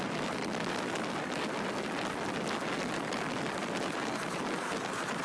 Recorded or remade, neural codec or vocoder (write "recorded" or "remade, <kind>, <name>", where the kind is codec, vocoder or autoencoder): recorded